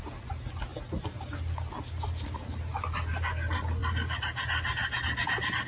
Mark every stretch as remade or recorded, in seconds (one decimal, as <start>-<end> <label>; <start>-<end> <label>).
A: 0.0-5.7 recorded